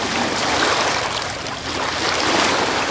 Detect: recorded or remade recorded